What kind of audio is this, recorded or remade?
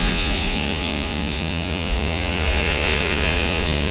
remade